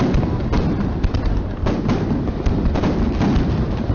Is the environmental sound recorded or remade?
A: remade